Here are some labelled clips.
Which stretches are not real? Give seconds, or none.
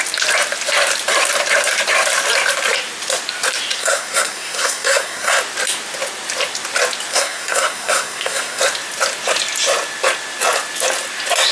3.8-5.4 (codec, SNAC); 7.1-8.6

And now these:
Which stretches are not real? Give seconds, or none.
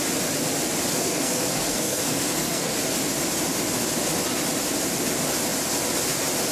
0.9-2.7 (codec, SNAC)